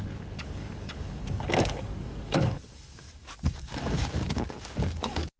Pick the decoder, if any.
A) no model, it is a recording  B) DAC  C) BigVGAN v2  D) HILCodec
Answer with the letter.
B